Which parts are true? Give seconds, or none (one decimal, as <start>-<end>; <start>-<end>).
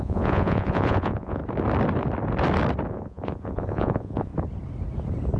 1.4-2.9; 4.3-5.4